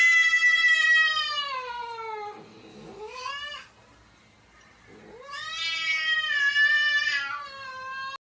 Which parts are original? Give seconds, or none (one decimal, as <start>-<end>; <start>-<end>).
0.0-2.7; 3.3-8.4